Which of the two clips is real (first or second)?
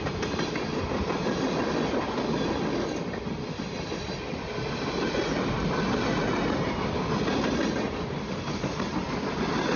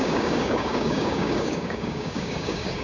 first